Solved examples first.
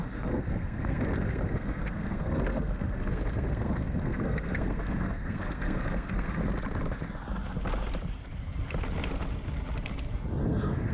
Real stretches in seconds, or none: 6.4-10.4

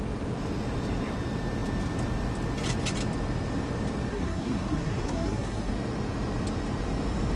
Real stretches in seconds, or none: 0.0-4.1; 5.7-7.4

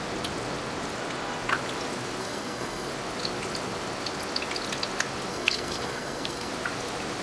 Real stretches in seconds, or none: 0.0-2.2; 2.9-5.3; 6.5-7.2

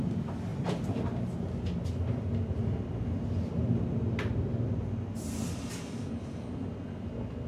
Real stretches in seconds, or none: 0.0-7.5

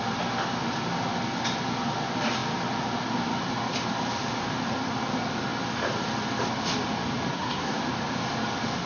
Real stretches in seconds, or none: 0.0-7.3; 7.8-8.9

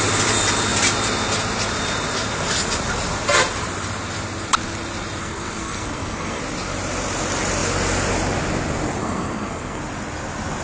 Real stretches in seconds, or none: 0.0-5.2; 6.4-9.0; 9.8-10.6

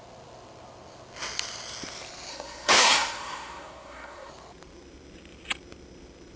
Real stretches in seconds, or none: 0.0-2.3; 4.3-6.4

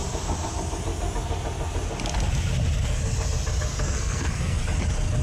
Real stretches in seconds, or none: 0.0-3.7; 4.6-5.2